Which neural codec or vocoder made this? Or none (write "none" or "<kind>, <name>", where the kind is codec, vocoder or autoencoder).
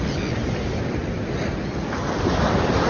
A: none